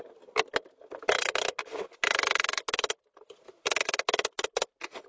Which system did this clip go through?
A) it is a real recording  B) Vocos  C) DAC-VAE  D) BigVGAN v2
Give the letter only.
A